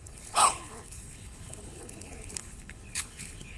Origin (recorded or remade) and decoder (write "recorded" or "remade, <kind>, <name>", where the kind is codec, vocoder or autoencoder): remade, codec, HILCodec